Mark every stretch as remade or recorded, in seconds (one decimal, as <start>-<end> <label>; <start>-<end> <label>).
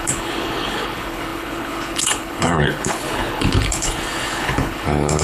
0.0-5.2 remade